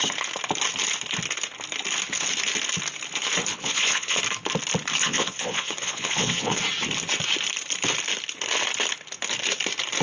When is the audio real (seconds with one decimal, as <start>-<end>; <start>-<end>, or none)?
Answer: 0.0-3.5; 4.2-5.0; 6.6-10.0